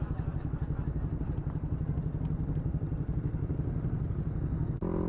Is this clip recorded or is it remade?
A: recorded